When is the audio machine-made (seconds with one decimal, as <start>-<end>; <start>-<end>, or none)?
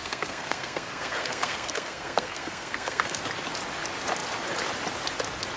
0.0-3.2